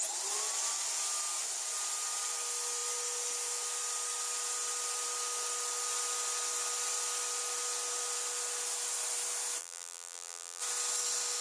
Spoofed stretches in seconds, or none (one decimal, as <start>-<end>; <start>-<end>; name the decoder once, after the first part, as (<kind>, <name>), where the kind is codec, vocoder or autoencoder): 9.6-10.6 (vocoder, BigVGAN v2)